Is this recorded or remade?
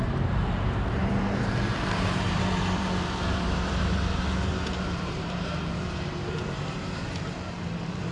remade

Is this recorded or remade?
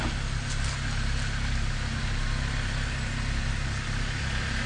recorded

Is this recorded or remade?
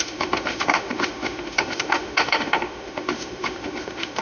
remade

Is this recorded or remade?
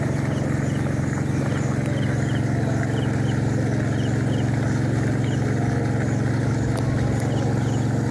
recorded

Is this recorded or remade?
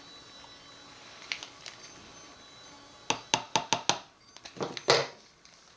recorded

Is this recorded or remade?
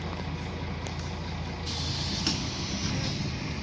recorded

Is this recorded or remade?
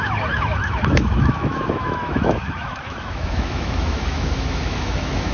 remade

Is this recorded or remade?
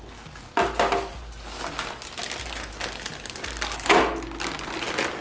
recorded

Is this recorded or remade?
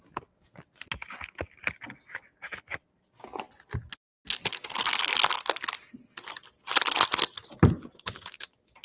recorded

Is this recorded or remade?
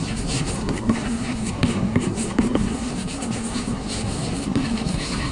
remade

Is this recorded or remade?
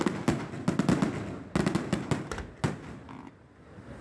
recorded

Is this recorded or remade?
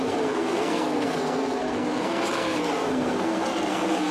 remade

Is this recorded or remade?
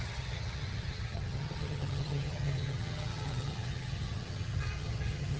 remade